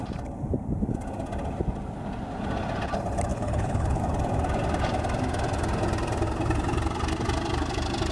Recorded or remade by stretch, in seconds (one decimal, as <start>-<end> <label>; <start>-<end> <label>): 0.0-3.3 recorded; 3.3-4.0 remade; 4.0-8.1 recorded